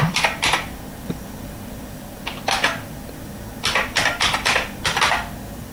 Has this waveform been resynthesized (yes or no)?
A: no